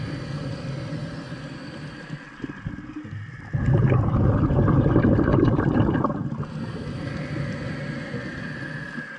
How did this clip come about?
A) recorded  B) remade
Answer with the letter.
A